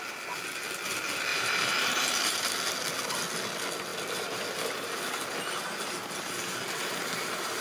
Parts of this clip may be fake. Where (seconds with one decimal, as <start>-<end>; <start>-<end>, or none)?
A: 1.3-2.5